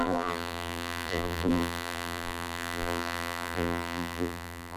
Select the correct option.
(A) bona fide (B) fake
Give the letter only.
B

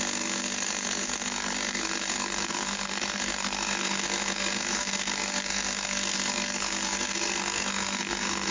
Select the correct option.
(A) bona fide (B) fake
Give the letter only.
B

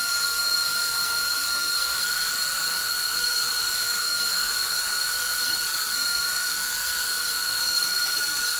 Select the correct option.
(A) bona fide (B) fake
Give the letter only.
B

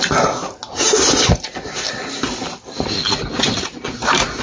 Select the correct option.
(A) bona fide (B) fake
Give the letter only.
A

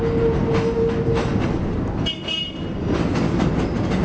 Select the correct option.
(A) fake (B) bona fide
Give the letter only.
B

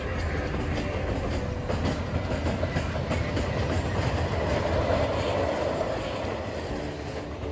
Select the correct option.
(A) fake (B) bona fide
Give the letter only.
B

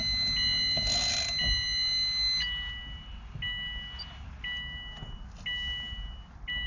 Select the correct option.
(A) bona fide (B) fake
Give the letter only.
A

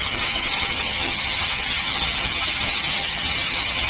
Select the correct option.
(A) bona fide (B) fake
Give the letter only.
B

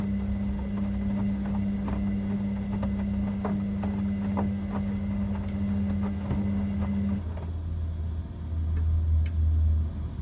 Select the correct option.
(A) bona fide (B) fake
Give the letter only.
A